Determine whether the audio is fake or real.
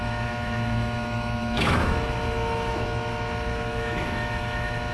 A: fake